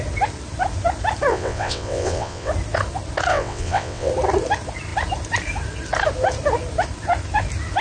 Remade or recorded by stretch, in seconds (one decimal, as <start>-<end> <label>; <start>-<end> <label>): 0.0-1.3 recorded; 1.3-2.5 remade; 2.5-3.3 recorded; 3.3-4.1 remade; 4.1-7.8 recorded